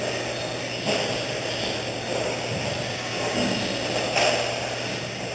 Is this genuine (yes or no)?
yes